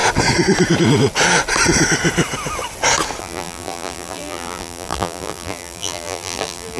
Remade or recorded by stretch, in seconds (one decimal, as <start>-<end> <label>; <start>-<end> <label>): 0.0-3.2 recorded; 3.2-6.8 remade